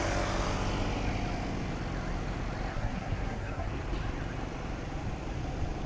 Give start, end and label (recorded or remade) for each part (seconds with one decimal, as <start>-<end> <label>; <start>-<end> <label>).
0.0-2.7 recorded; 2.7-3.7 remade; 3.7-5.9 recorded